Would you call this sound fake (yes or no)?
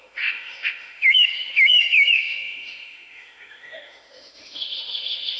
yes